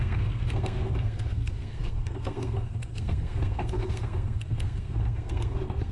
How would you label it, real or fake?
fake